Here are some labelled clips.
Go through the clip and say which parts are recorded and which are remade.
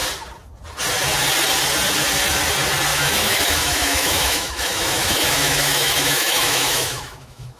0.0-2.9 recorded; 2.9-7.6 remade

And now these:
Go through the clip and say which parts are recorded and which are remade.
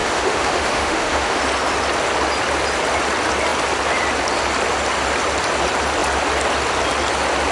0.0-1.4 remade; 1.4-7.5 recorded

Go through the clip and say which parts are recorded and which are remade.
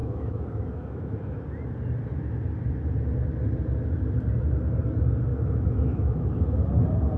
0.0-1.4 remade; 1.4-5.3 recorded; 5.3-6.6 remade; 6.6-7.2 recorded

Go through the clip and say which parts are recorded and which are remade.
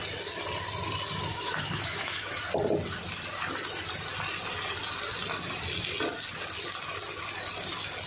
0.0-1.3 recorded; 1.3-2.3 remade; 2.3-8.1 recorded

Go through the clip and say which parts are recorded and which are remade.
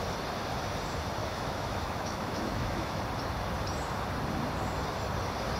0.0-1.2 recorded; 1.2-3.0 remade; 3.0-5.6 recorded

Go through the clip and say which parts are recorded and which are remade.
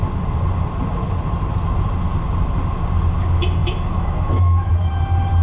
0.0-3.6 recorded; 3.6-4.7 remade; 4.7-5.4 recorded